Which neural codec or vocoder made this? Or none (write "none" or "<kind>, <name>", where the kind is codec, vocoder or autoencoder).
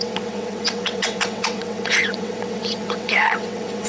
vocoder, WaveNeXt